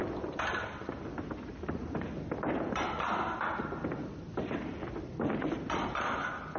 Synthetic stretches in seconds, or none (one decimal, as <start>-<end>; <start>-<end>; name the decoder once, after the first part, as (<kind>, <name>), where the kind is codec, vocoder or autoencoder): none